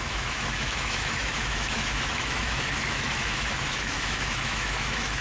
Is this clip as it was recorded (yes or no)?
no